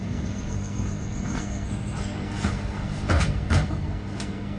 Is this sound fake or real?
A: fake